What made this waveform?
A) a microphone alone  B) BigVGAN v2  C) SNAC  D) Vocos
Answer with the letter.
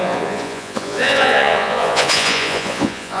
D